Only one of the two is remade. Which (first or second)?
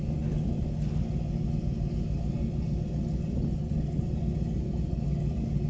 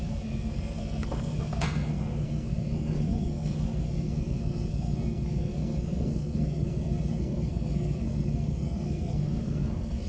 second